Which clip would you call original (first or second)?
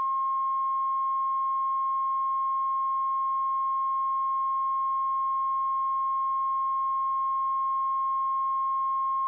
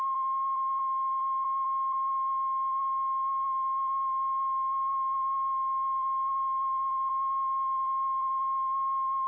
first